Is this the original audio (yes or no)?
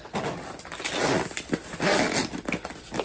yes